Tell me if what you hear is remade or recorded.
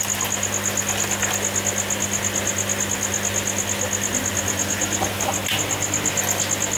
recorded